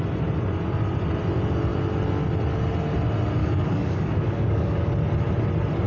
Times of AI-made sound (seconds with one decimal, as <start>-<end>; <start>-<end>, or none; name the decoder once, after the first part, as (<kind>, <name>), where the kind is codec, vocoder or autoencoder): 3.4-4.9 (codec, DAC)